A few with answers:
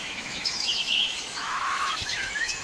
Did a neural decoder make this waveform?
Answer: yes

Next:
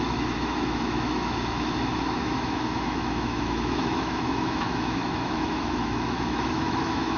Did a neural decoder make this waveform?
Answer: yes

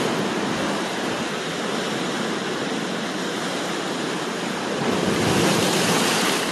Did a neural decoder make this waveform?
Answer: no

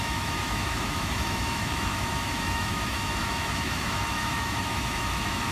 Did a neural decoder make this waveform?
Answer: yes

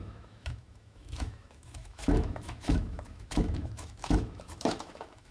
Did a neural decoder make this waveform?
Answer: yes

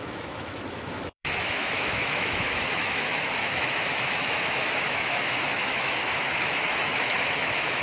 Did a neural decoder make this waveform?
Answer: yes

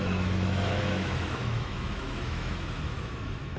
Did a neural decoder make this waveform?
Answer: yes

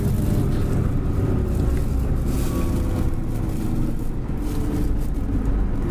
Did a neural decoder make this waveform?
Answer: no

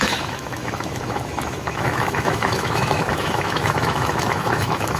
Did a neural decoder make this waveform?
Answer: yes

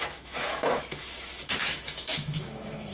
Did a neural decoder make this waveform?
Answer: yes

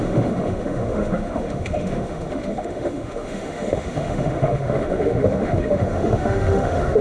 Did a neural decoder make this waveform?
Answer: yes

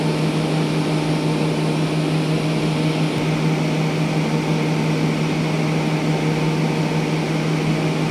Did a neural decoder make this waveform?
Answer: no